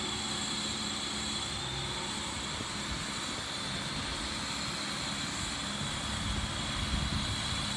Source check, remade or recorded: recorded